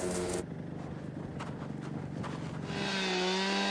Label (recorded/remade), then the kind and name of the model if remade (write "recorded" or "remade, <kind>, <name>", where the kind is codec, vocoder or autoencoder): recorded